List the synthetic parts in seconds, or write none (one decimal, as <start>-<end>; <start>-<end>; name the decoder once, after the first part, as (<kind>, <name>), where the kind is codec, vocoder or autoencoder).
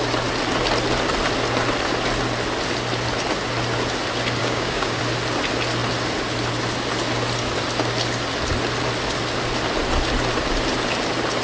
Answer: 4.4-5.0 (codec, DAC)